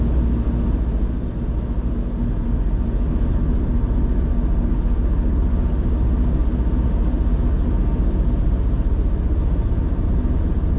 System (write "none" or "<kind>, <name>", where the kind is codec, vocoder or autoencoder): none